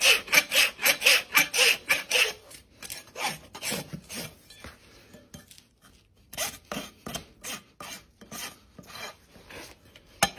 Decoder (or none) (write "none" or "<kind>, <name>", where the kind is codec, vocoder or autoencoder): none